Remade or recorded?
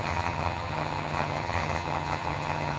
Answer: remade